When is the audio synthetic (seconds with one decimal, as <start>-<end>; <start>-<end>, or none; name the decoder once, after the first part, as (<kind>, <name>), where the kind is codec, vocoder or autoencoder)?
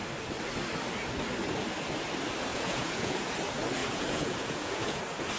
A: 2.5-3.3 (vocoder, Vocos); 3.8-5.0